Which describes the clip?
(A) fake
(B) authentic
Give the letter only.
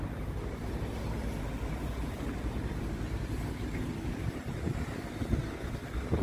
B